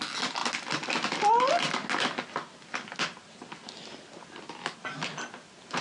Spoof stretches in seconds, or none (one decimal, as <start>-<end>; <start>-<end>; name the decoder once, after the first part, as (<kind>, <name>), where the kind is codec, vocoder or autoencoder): none